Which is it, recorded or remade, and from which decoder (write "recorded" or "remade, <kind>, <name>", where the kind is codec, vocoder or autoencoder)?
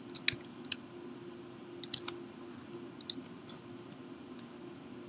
recorded